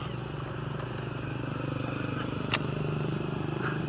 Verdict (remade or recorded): recorded